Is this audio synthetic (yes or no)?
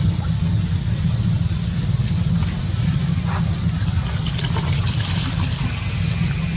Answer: no